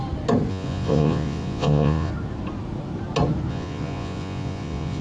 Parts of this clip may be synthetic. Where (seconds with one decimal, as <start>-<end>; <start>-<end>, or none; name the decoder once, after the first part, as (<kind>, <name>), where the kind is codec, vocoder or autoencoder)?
0.5-2.1 (vocoder, Vocos); 3.5-5.0

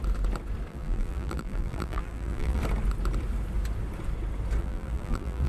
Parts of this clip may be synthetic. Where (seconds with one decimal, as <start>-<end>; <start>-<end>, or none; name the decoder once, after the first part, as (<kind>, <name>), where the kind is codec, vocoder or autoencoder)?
0.7-2.6 (vocoder, BigVGAN v2); 4.6-5.5

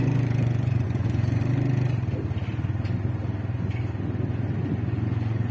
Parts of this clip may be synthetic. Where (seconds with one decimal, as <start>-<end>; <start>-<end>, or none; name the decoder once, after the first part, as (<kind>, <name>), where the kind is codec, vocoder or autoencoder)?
0.0-1.4 (vocoder, Vocos); 4.7-5.5

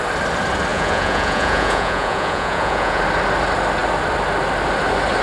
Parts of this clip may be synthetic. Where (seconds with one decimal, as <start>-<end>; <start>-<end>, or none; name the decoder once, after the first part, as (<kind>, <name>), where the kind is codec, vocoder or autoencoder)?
0.7-3.0 (vocoder, Vocos)

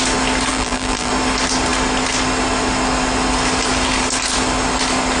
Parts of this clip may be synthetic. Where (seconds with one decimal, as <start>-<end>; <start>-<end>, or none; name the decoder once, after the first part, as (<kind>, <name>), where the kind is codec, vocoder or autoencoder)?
0.5-1.1 (vocoder, BigVGAN v2)

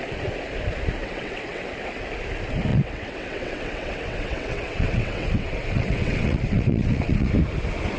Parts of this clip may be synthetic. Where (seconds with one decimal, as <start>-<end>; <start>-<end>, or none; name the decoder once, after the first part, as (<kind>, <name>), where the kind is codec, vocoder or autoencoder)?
1.0-1.6 (vocoder, WaveNeXt); 2.7-7.3

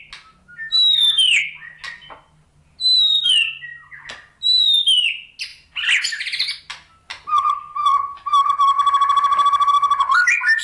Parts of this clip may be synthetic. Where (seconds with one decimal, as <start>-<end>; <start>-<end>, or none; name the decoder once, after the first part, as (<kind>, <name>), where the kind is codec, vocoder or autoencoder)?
none

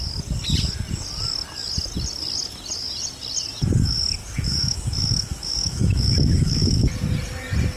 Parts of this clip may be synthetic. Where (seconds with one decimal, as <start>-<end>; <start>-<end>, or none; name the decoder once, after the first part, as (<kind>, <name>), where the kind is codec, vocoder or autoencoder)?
4.2-6.9 (autoencoder, DAC-VAE)